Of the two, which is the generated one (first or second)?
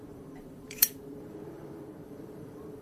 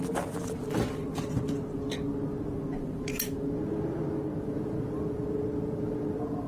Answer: first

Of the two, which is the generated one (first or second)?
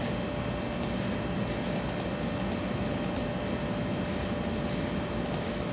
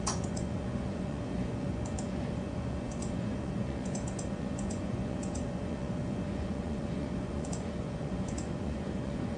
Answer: second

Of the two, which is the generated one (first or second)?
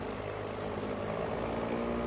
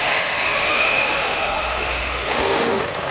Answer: second